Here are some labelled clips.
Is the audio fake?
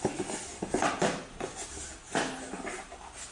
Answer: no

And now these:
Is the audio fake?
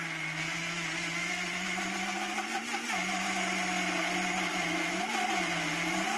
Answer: no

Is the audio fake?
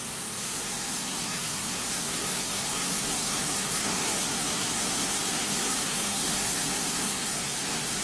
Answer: yes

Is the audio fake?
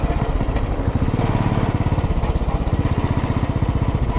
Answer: no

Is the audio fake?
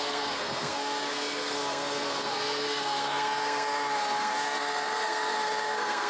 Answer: yes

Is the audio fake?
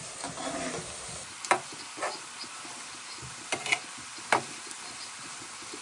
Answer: no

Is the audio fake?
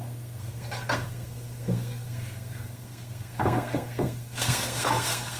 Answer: yes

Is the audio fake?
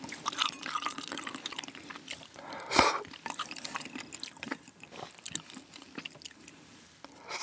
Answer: no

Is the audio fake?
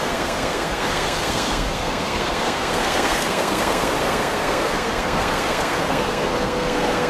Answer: yes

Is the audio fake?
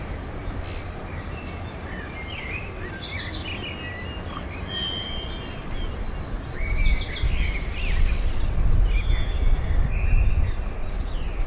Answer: no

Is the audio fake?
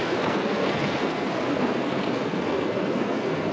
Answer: yes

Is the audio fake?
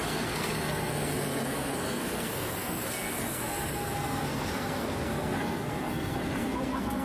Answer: yes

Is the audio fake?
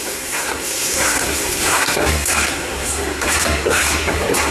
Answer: yes